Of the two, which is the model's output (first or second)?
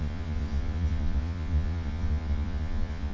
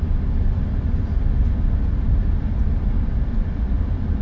first